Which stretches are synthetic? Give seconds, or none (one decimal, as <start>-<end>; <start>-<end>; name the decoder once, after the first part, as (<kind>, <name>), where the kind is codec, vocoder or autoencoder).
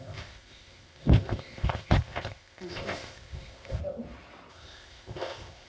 0.0-3.8 (codec, ZipCodec); 4.5-5.7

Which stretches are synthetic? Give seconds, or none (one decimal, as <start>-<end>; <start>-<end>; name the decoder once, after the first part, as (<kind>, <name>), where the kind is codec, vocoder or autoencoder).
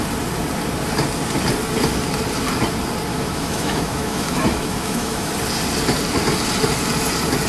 3.1-5.3 (autoencoder, DAC-VAE)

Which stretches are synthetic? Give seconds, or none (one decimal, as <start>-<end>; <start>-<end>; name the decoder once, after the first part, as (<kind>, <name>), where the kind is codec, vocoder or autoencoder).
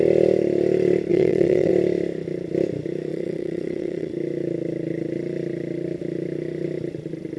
1.1-1.7 (vocoder, WaveNeXt); 3.1-4.1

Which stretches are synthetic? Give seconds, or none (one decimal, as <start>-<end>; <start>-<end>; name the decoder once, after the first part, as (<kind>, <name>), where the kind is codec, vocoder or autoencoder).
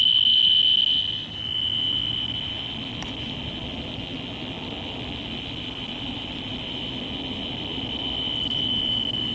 none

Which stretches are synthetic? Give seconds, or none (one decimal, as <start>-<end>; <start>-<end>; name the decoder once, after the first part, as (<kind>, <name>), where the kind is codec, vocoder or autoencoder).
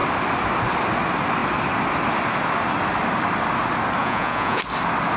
4.0-4.6 (vocoder, Vocos)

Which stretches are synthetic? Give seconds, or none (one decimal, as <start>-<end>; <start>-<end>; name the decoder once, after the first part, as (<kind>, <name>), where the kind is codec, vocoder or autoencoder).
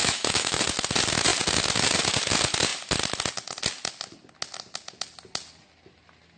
0.0-0.6 (autoencoder, DAC-VAE)